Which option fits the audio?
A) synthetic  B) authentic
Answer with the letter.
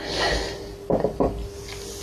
B